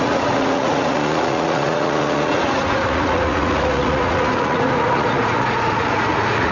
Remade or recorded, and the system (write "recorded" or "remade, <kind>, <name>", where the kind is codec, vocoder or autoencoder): remade, vocoder, Vocos